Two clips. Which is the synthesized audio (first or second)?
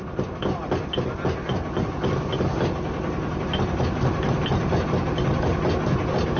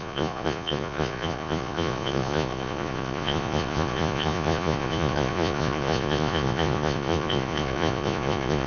second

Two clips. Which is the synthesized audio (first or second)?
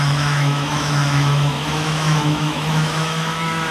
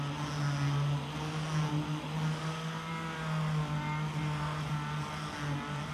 first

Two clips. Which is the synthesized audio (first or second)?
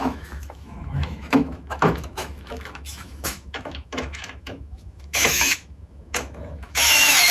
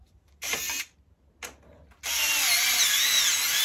first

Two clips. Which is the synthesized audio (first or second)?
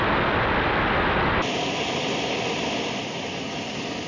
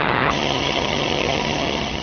second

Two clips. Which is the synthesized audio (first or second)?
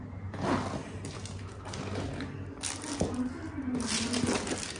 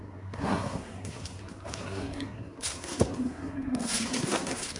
second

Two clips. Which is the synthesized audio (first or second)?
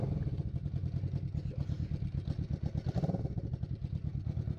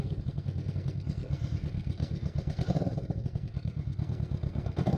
second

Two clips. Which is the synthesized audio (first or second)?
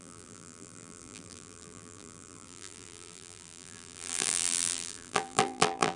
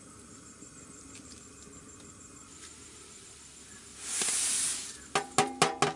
first